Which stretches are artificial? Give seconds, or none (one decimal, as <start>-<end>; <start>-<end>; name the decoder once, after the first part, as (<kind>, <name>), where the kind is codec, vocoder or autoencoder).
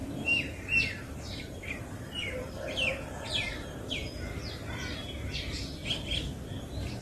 0.0-5.8 (vocoder, BigVGAN v2); 6.6-7.0